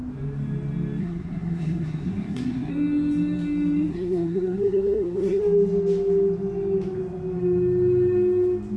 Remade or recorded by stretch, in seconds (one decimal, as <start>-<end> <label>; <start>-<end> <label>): 0.0-1.0 recorded; 1.0-2.7 remade; 2.7-3.9 recorded; 3.9-5.4 remade; 5.4-8.8 recorded